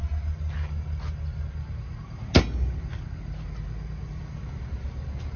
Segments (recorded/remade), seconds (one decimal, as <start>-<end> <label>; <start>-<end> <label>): 0.0-5.4 recorded